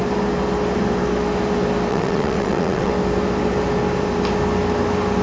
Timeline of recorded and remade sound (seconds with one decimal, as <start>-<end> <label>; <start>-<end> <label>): 0.0-1.9 recorded; 1.9-2.9 remade; 2.9-5.2 recorded